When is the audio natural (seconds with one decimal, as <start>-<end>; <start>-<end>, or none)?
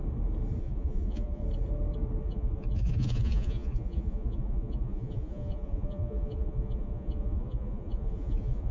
0.0-0.6; 1.4-2.2